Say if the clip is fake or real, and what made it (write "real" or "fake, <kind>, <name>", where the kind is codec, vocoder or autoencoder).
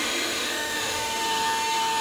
fake, autoencoder, DAC-VAE